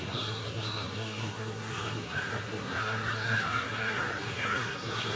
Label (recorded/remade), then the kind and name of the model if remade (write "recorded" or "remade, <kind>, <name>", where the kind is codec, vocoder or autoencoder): remade, codec, SNAC